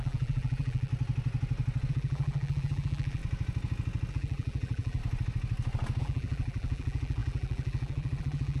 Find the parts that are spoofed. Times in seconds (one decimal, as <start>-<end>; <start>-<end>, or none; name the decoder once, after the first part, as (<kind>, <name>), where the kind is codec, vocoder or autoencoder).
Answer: 0.0-0.9 (vocoder, BigVGAN v2); 1.9-3.2; 4.1-5.0; 6.0-8.6